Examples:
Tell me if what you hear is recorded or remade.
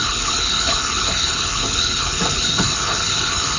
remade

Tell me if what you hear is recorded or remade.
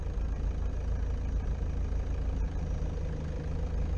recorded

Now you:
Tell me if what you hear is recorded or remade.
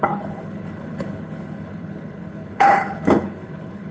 remade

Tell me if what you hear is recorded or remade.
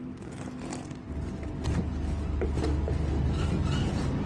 recorded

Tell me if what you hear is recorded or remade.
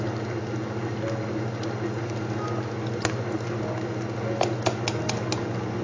recorded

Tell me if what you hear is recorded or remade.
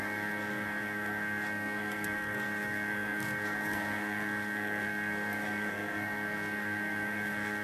remade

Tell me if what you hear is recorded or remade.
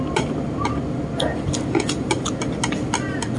recorded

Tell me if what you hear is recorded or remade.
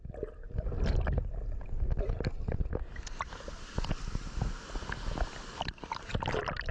recorded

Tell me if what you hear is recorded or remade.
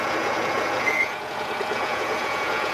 remade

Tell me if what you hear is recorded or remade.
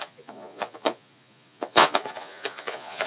remade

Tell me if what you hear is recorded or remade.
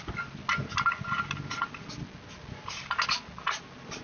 recorded